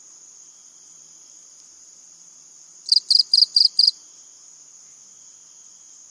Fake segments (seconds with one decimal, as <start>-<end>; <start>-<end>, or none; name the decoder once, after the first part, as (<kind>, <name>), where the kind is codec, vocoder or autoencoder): 0.6-4.0 (vocoder, BigVGAN v2)